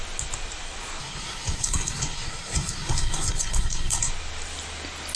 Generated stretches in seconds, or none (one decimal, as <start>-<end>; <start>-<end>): 1.0-4.1